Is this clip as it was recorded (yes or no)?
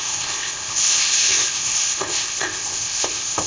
no